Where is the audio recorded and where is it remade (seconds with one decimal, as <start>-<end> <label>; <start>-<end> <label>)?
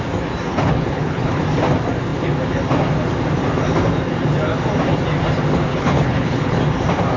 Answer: 0.0-0.5 recorded; 0.5-1.4 remade; 1.4-5.7 recorded; 5.7-6.6 remade; 6.6-7.2 recorded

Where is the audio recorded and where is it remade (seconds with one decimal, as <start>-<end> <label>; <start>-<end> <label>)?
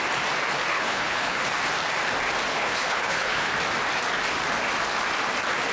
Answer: 0.0-0.7 recorded; 0.7-1.4 remade; 1.4-2.5 recorded; 2.5-3.5 remade; 3.5-5.7 recorded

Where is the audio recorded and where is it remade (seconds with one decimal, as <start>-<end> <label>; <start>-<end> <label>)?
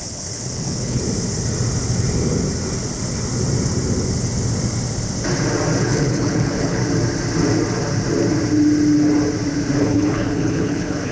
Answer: 0.0-1.0 remade; 1.0-5.8 recorded; 5.8-6.8 remade; 6.8-9.8 recorded; 9.8-11.1 remade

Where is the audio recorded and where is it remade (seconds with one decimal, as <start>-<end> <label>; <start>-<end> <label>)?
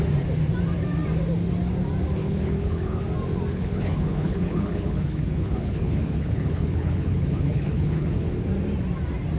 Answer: 0.0-2.2 recorded; 2.2-3.0 remade; 3.0-3.5 recorded; 3.5-8.3 remade; 8.3-9.4 recorded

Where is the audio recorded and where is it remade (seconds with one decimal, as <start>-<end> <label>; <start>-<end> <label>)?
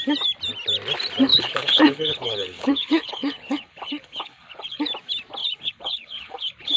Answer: 0.0-1.3 recorded; 1.3-4.8 remade; 4.8-5.4 recorded; 5.4-6.8 remade